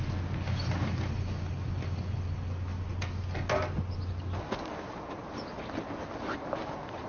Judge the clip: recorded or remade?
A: recorded